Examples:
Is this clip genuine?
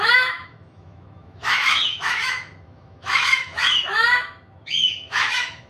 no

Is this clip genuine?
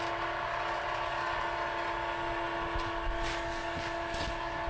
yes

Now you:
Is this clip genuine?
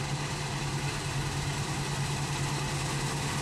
yes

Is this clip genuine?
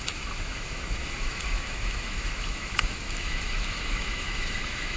no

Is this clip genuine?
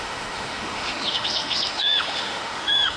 no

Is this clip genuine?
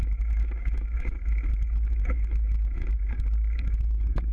no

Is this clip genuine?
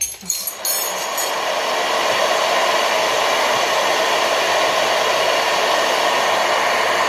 yes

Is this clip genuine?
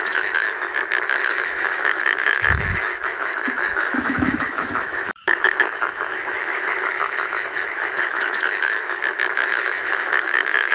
no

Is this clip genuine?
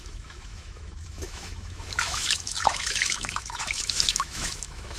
no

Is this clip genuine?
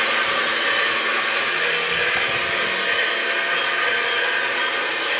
yes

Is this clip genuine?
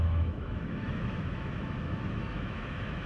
no